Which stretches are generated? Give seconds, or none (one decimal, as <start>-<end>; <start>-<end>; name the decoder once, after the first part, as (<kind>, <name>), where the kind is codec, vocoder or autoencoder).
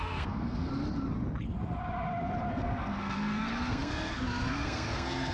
0.0-0.7 (codec, SNAC); 2.5-5.3